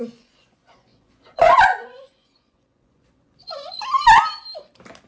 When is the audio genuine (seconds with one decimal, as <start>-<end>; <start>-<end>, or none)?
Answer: 3.8-5.1